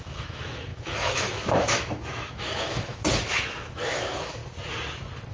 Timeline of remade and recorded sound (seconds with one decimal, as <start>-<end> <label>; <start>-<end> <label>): 0.0-4.4 remade; 4.4-5.3 recorded